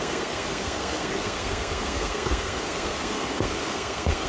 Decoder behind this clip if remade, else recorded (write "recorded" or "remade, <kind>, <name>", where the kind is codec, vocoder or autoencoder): remade, codec, SNAC